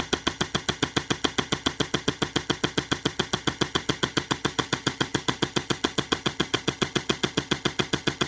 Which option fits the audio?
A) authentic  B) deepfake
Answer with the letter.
B